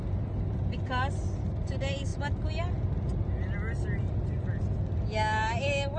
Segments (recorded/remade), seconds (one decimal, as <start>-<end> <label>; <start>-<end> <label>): 0.0-6.0 recorded